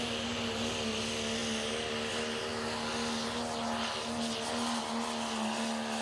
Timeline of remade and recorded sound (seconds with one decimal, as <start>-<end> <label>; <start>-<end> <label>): 0.0-6.0 recorded